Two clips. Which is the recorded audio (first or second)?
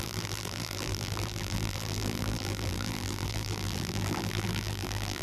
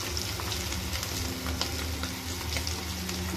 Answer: second